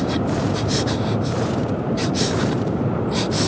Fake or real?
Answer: fake